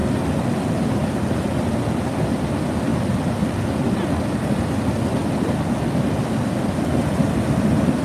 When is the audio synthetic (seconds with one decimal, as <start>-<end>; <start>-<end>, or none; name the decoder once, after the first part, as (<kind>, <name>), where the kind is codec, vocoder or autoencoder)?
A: none